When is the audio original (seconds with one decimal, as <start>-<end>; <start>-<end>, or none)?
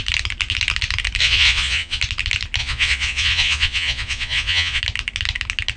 0.0-1.2; 2.0-2.6; 4.8-5.8